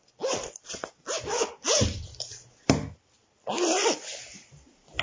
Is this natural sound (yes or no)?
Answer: yes